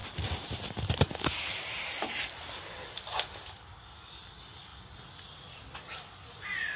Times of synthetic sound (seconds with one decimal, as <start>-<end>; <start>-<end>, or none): none